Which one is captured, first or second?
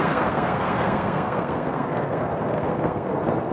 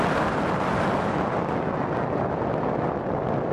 second